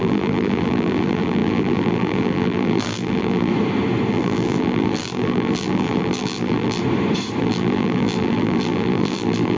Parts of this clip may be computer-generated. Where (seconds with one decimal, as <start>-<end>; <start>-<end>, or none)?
0.0-3.5; 4.1-6.8; 7.4-9.6